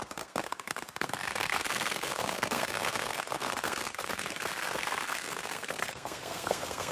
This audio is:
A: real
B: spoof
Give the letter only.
B